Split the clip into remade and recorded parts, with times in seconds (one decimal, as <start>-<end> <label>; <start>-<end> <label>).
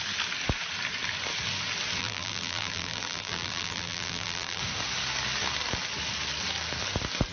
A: 0.0-2.0 recorded; 2.0-4.6 remade; 4.6-7.3 recorded